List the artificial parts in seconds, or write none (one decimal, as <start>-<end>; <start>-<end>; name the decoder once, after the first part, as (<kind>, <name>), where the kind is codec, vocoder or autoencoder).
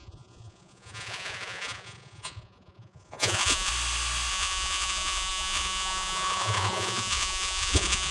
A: 0.0-3.7 (vocoder, Vocos); 4.3-8.1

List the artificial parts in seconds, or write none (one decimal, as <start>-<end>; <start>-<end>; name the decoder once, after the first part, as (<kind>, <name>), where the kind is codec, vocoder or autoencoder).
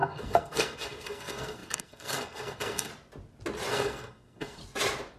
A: 0.0-2.9 (codec, SNAC); 3.7-4.6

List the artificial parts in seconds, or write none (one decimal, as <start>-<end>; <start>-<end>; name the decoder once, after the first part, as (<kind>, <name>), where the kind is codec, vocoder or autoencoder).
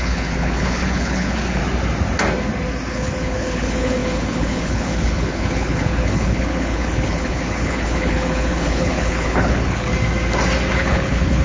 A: 0.0-1.6 (codec, HILCodec); 2.9-9.9; 10.7-11.4